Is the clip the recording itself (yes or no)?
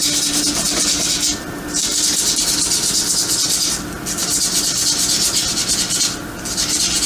yes